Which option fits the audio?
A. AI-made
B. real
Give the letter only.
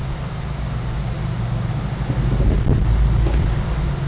B